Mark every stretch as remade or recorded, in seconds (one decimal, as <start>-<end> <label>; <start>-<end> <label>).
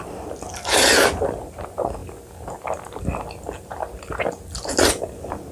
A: 0.0-5.5 recorded